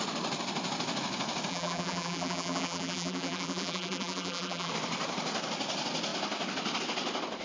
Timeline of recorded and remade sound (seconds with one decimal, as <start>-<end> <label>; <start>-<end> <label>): 0.0-1.5 recorded; 1.5-4.7 remade; 4.7-7.4 recorded